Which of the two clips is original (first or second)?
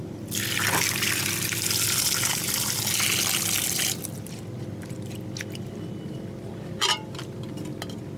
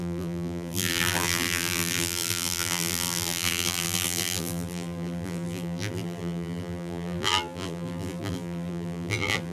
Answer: first